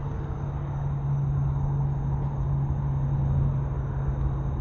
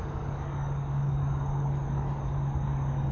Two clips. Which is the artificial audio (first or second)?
second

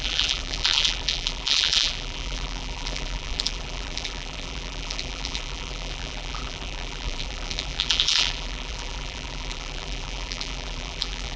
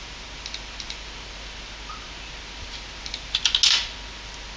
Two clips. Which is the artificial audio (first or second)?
first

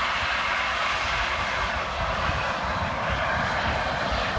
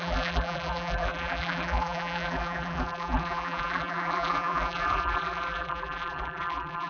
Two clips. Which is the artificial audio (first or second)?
second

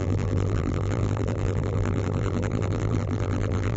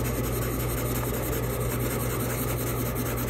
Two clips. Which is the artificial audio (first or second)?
first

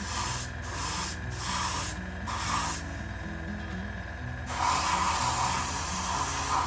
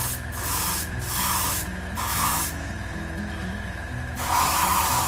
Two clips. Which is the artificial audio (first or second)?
second